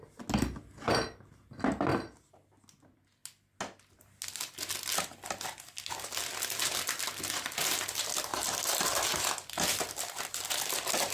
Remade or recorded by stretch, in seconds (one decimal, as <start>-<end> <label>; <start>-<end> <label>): 0.0-11.1 recorded